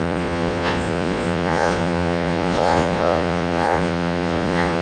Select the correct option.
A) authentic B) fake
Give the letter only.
B